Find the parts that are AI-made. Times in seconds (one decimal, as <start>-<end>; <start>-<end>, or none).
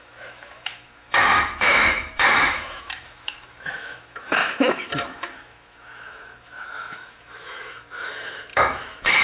0.0-9.2